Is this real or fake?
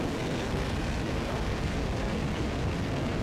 fake